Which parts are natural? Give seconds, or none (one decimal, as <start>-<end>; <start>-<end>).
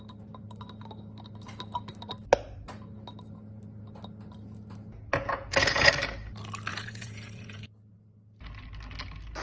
0.0-5.1; 5.9-6.7; 7.6-9.4